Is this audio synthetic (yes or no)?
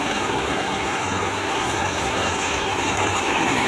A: yes